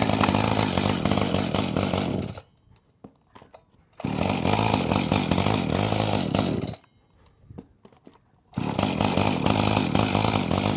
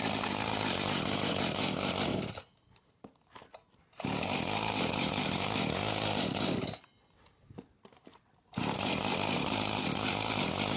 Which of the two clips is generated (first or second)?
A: second